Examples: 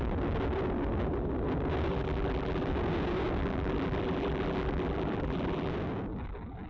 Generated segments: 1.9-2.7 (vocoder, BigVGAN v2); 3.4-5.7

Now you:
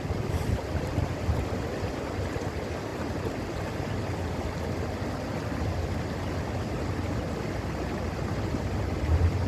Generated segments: none

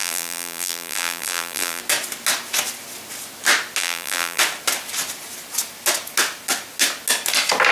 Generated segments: 0.0-1.8 (vocoder, BigVGAN v2); 3.8-4.4

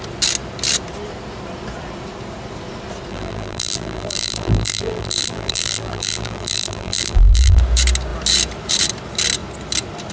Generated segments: 3.1-7.6 (vocoder, BigVGAN v2)